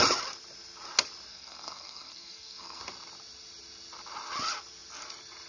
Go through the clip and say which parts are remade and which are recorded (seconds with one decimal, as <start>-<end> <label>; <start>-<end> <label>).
0.0-1.3 recorded; 1.3-2.8 remade; 2.8-5.5 recorded